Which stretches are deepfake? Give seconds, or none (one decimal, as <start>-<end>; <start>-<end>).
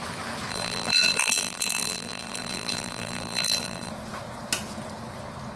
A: 0.5-3.9